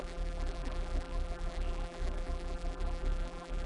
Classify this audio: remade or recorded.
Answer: remade